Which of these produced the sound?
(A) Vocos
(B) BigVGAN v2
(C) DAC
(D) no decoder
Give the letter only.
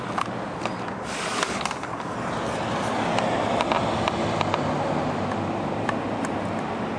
D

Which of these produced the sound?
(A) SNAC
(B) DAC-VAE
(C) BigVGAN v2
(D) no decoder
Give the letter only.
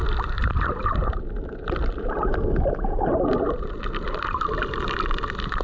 C